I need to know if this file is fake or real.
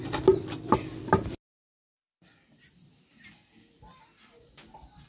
real